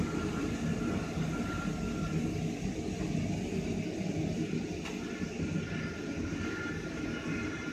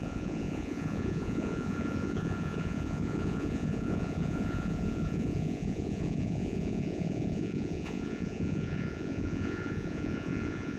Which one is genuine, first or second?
first